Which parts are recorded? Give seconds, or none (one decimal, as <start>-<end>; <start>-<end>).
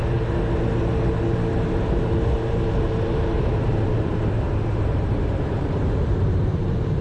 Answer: 0.0-1.3